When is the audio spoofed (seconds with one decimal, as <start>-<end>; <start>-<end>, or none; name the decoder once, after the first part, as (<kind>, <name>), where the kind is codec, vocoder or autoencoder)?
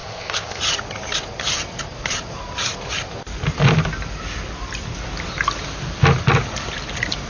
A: 0.0-0.6 (codec, ZipCodec)